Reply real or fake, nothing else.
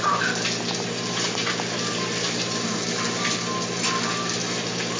real